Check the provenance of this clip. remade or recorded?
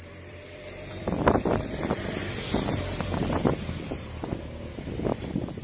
remade